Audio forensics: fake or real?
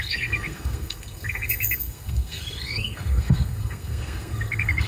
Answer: fake